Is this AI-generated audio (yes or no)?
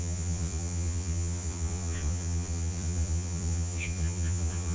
yes